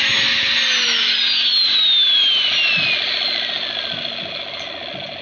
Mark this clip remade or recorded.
recorded